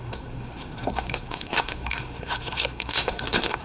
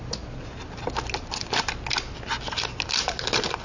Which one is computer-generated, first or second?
first